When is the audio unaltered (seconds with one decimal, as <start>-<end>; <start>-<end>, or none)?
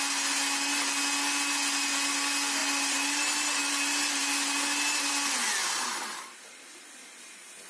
0.0-2.6; 3.7-7.7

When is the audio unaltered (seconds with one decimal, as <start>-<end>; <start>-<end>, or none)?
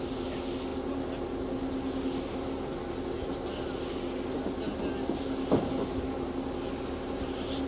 0.0-7.7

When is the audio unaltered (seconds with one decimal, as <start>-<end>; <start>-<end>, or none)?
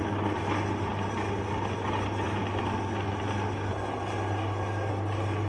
0.0-5.5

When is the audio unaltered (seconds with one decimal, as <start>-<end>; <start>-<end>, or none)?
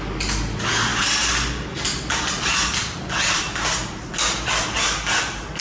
0.0-5.6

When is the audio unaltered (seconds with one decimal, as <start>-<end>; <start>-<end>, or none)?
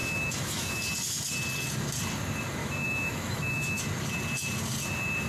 0.8-2.6; 3.8-5.3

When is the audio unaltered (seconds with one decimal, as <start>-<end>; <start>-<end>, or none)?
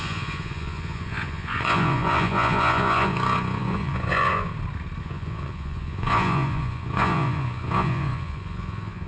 4.5-5.0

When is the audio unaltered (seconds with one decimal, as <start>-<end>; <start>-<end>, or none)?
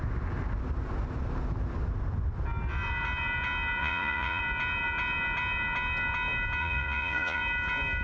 0.0-3.8; 4.4-6.6; 7.4-8.0